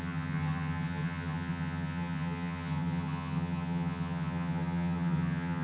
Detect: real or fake fake